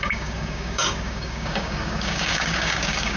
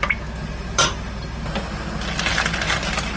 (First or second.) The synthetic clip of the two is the first